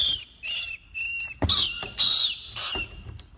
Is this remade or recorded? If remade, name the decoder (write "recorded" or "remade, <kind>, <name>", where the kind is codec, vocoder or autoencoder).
recorded